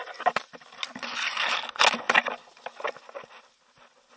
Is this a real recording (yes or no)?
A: yes